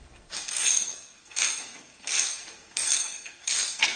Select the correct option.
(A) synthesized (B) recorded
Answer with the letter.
A